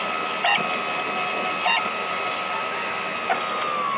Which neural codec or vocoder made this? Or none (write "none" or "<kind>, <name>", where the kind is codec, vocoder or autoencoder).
none